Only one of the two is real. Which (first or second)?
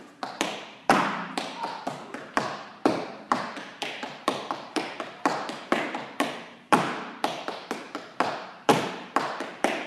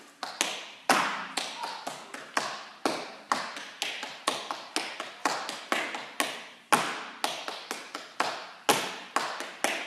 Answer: second